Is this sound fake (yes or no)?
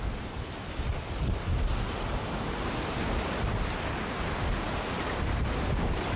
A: no